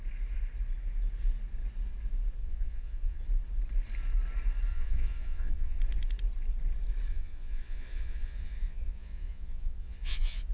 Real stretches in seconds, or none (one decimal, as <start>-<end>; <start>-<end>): 0.0-2.4; 3.2-4.7; 5.8-7.1